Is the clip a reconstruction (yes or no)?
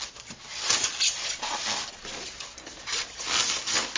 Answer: no